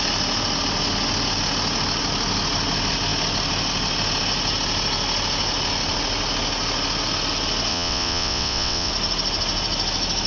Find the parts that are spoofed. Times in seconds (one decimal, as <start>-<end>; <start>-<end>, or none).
7.7-8.9